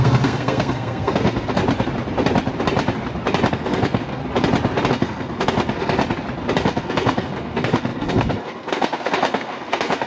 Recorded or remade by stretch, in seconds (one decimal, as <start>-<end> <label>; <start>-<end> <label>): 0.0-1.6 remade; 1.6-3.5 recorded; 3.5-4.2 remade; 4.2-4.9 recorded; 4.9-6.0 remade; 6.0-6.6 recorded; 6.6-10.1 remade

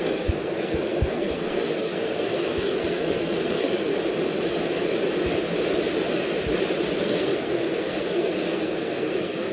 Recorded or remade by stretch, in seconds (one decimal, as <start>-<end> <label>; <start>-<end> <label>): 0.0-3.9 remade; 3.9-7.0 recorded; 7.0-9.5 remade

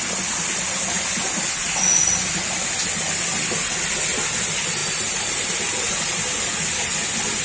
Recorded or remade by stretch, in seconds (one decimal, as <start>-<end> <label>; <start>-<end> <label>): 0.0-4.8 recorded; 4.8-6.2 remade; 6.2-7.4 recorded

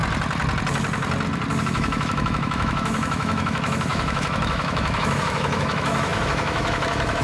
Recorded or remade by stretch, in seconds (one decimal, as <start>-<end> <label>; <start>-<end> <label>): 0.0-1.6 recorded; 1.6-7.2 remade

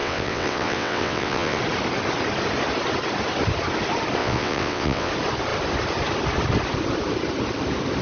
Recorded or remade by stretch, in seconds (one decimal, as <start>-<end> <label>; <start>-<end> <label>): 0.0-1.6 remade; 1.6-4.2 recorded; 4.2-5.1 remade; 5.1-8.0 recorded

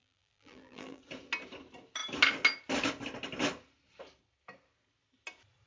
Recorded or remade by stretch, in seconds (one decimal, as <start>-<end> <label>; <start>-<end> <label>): 0.0-1.0 remade; 1.0-5.7 recorded

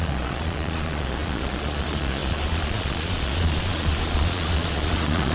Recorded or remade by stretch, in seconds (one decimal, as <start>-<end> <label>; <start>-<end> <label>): 0.0-5.3 remade